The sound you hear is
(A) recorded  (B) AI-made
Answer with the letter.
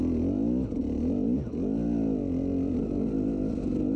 A